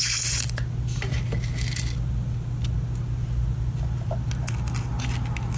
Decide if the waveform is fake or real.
real